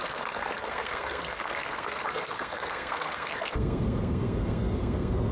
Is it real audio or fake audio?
fake